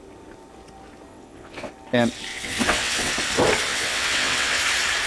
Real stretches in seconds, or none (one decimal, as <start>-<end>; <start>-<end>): 0.0-1.1; 1.7-2.3; 3.1-3.7; 4.6-5.1

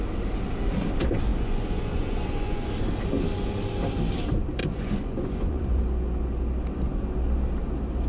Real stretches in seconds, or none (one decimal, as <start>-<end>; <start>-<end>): 0.0-1.3; 2.7-4.6; 5.8-8.1

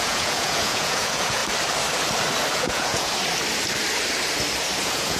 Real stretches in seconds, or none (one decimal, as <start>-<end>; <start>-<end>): 1.4-2.5; 3.1-4.8

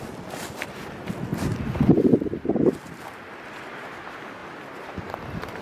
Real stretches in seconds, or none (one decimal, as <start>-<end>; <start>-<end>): 0.0-5.6

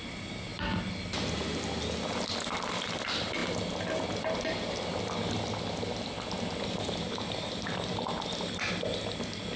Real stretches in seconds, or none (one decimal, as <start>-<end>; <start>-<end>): 0.0-9.6

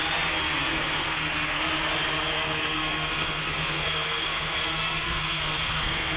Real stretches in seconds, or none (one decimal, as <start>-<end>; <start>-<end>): 0.0-0.7; 1.6-2.3